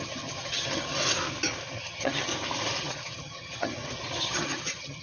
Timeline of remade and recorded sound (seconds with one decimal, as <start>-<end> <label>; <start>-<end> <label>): 0.0-1.0 remade; 1.0-1.8 recorded; 1.8-2.3 remade; 2.3-2.8 recorded; 2.8-3.7 remade; 3.7-4.2 recorded; 4.2-5.0 remade